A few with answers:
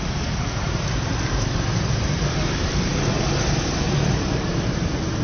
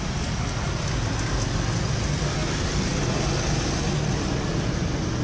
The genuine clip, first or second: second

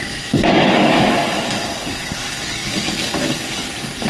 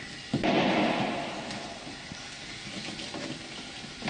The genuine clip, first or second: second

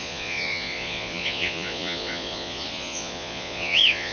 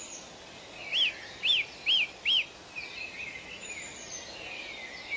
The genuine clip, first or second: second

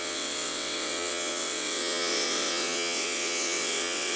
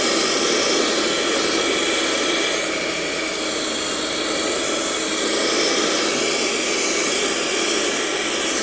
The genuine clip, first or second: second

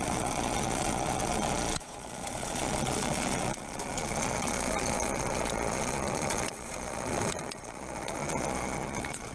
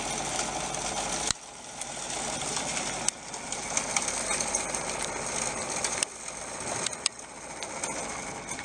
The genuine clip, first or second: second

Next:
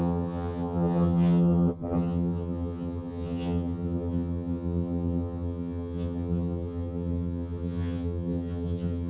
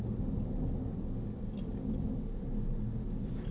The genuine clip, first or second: second